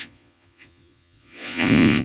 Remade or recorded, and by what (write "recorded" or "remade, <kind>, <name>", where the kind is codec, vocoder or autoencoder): remade, vocoder, Vocos